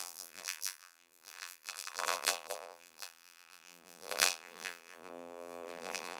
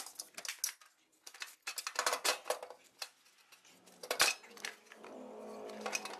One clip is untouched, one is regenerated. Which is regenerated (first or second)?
first